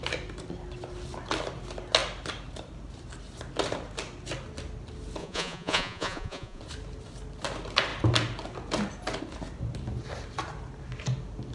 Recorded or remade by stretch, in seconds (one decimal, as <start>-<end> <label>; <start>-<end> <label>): 0.0-5.2 recorded; 5.2-6.6 remade; 6.6-11.5 recorded